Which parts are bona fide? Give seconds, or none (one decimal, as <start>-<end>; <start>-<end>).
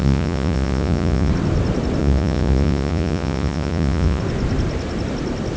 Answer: 1.3-2.0; 4.2-5.6